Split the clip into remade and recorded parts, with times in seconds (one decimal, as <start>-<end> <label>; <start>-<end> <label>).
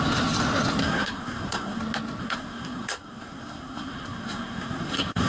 0.0-0.8 recorded; 0.8-1.8 remade; 1.8-2.2 recorded; 2.2-5.3 remade